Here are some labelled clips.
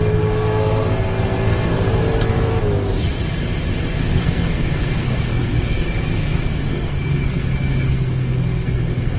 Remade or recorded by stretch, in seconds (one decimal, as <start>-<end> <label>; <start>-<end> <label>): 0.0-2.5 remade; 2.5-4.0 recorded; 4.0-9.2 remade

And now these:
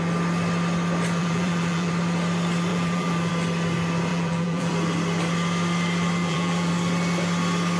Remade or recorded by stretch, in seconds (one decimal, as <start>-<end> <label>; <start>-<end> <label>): 0.0-1.2 recorded; 1.2-1.9 remade; 1.9-2.7 recorded; 2.7-3.3 remade; 3.3-4.1 recorded; 4.1-4.7 remade; 4.7-6.2 recorded; 6.2-6.7 remade; 6.7-7.8 recorded

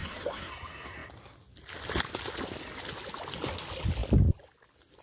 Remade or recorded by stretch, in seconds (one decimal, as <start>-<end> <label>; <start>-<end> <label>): 0.0-0.5 remade; 0.5-5.0 recorded